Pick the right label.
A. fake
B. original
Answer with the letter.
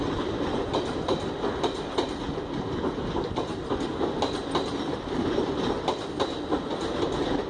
B